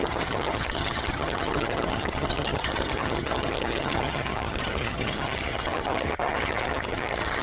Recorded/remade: remade